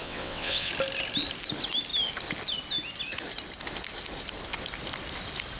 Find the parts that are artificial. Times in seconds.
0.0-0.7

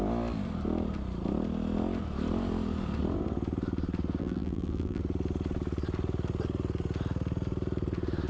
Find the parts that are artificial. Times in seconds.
4.2-5.0

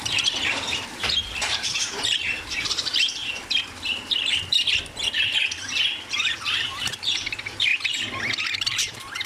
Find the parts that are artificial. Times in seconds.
0.0-3.2; 6.1-7.7; 8.6-9.3

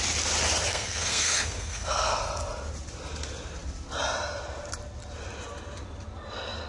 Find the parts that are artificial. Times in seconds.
0.7-2.2

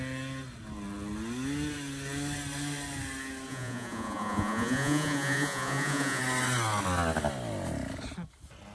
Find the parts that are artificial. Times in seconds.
3.5-6.2

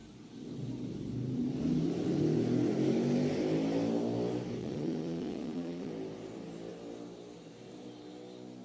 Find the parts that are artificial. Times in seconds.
4.6-5.9

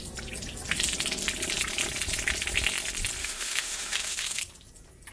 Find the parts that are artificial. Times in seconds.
3.2-4.4

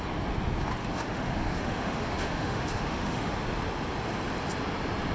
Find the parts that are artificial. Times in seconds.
0.8-3.3